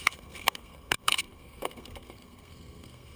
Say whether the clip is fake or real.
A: fake